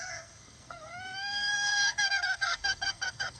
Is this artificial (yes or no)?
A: yes